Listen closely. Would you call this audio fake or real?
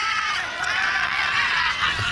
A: fake